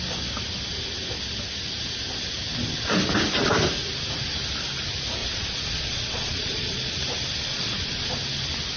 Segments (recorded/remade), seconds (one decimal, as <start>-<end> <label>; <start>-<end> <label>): 0.0-5.2 recorded; 5.2-6.9 remade; 6.9-7.5 recorded; 7.5-8.1 remade; 8.1-8.8 recorded